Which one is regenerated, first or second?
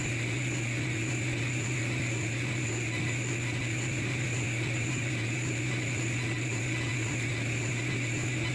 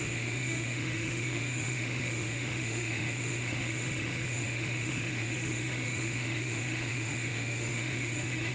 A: second